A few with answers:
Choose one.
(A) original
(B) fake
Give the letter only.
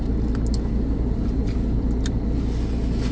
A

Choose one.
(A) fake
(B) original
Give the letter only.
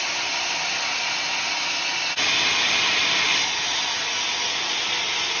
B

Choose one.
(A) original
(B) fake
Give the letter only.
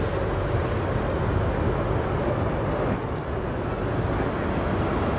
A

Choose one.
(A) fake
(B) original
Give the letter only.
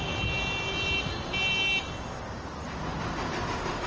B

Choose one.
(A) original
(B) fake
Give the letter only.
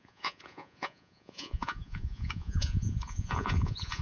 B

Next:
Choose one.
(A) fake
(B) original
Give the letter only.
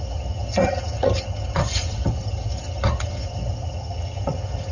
A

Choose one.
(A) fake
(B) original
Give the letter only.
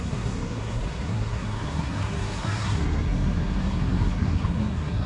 A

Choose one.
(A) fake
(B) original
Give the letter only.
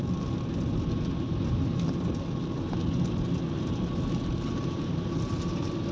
B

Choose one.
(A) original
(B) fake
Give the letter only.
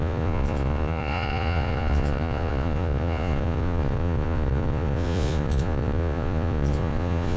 B